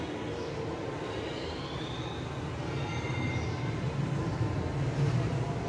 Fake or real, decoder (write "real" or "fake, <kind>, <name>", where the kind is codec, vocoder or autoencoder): real